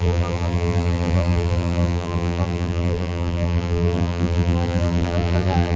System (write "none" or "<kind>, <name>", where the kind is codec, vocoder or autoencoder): vocoder, BigVGAN v2